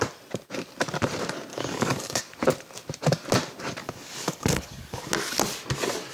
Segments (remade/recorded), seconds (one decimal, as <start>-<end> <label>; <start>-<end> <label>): 0.0-1.5 recorded; 1.5-2.2 remade; 2.2-3.8 recorded; 3.8-5.0 remade; 5.0-6.1 recorded